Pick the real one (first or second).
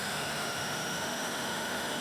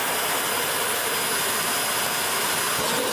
second